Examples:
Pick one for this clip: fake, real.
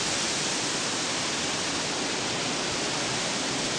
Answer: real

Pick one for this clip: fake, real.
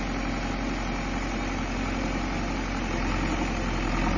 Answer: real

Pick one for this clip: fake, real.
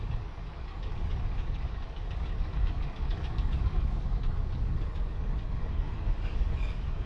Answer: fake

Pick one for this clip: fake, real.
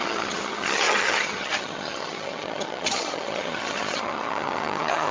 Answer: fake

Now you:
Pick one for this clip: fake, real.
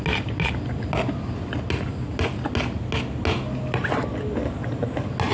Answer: real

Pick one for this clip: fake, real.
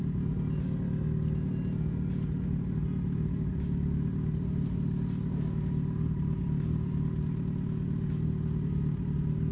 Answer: real